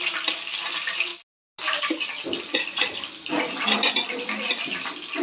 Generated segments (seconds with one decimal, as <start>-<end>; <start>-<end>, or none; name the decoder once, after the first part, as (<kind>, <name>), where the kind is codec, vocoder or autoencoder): none